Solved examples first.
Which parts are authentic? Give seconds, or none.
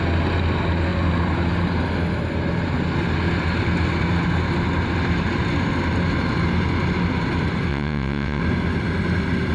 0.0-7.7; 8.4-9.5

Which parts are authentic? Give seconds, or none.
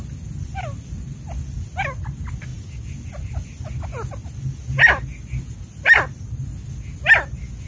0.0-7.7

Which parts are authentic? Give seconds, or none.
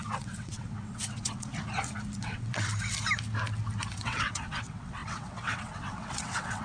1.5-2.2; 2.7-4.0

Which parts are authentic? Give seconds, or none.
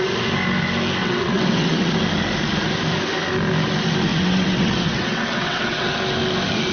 0.0-1.0; 1.9-4.1; 5.9-6.7